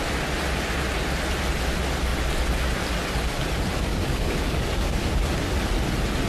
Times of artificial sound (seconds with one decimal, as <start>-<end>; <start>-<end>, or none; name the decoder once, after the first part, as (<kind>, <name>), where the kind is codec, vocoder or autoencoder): 3.9-5.1 (codec, DAC)